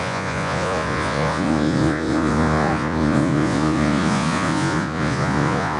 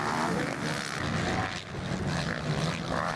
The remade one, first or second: first